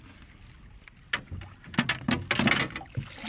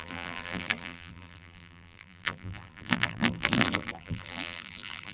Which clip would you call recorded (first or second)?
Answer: first